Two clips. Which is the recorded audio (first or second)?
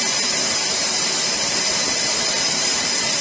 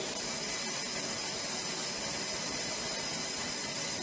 second